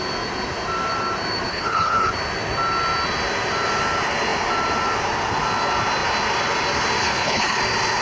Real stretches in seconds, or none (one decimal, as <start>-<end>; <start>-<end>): 0.0-1.5; 2.1-7.0; 7.6-8.0